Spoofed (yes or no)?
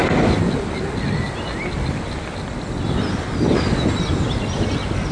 no